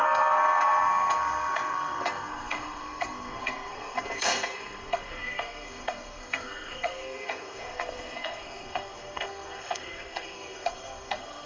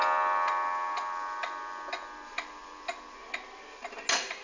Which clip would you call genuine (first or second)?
second